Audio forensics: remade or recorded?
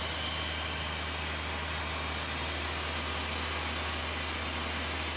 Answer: recorded